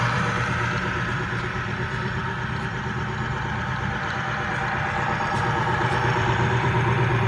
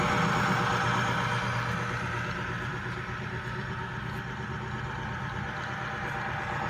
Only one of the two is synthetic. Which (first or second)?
first